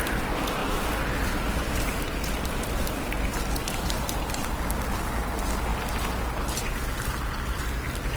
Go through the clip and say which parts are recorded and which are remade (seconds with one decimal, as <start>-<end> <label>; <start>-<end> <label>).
0.0-3.3 recorded; 3.3-4.4 remade; 4.4-8.2 recorded